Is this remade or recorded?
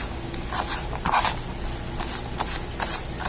recorded